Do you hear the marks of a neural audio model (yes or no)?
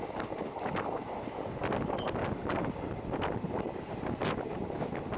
no